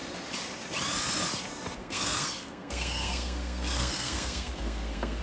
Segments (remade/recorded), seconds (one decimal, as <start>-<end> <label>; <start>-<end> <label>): 0.0-1.8 recorded; 1.8-5.2 remade